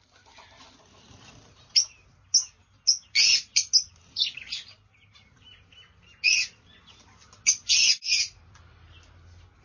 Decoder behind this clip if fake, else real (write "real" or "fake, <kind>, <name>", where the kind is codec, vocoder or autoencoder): real